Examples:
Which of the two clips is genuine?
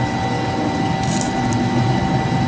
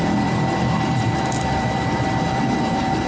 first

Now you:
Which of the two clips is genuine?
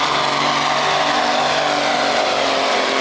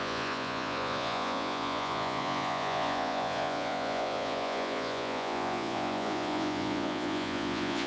first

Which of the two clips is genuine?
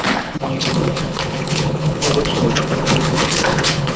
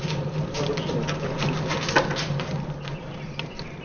second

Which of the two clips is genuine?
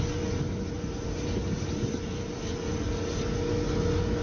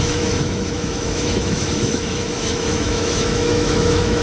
first